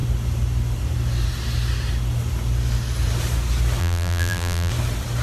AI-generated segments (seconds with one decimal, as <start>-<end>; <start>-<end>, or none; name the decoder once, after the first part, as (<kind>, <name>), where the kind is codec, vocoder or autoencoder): 3.8-4.7 (vocoder, BigVGAN v2)